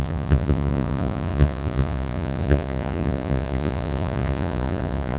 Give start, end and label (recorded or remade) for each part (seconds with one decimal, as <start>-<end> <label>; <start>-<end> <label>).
0.0-5.2 remade